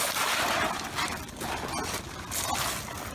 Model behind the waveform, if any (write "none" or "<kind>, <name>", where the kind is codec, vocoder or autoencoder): none